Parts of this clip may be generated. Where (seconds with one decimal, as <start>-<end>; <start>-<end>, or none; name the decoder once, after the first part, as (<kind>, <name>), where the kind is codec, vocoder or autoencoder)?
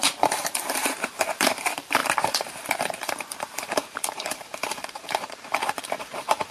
0.0-6.5 (vocoder, BigVGAN v2)